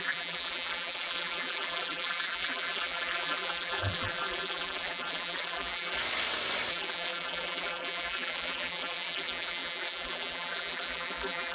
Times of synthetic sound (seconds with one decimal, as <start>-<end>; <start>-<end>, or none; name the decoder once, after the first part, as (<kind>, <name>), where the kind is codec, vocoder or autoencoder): 0.0-6.0 (vocoder, BigVGAN v2); 6.7-11.5